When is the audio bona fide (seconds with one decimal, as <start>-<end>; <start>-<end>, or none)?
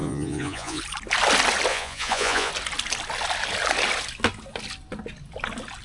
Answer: 0.8-1.7; 2.5-5.8